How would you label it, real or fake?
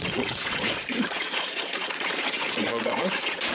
fake